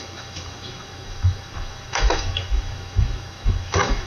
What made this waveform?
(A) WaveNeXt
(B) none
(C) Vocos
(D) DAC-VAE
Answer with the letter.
D